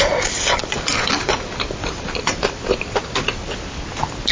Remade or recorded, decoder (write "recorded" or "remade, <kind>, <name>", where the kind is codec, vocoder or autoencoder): recorded